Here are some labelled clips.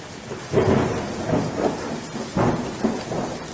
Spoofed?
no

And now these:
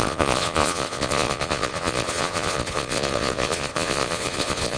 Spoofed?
yes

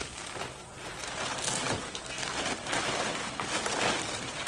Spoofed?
no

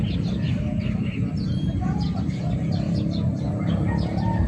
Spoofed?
no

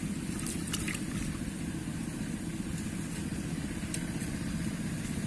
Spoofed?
no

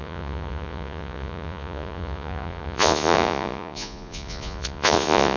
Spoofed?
yes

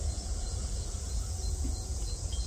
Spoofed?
yes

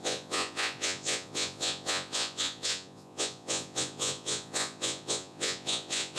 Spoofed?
yes